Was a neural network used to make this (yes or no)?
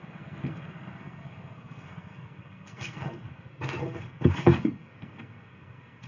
yes